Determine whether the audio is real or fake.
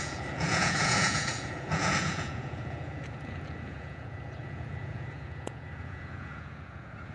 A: fake